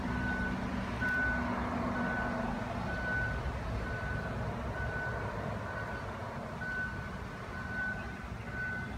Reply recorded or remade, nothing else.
recorded